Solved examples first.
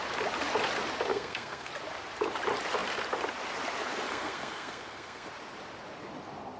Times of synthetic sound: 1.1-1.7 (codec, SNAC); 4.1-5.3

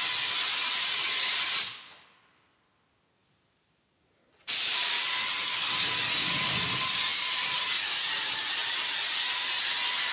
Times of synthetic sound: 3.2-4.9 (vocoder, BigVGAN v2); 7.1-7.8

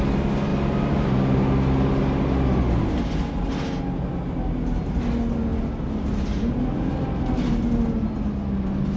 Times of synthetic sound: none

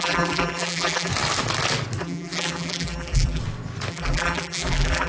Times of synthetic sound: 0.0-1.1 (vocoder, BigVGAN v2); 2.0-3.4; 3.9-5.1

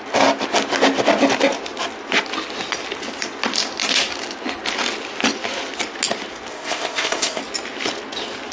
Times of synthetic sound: 6.5-7.4 (codec, ZipCodec)

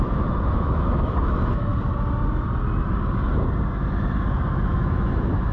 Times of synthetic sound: 0.0-1.7 (autoencoder, DAC-VAE); 4.7-5.5

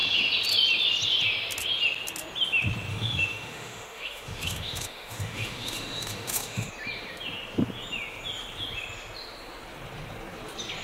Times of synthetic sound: 2.9-6.7 (autoencoder, DAC-VAE)